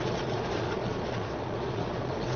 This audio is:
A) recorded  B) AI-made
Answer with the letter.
B